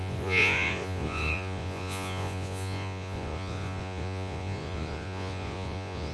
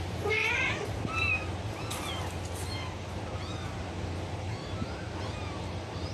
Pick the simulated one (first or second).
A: first